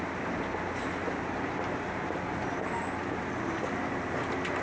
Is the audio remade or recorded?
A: recorded